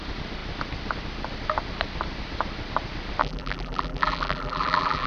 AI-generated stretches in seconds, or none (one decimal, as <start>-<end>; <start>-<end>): 3.2-5.1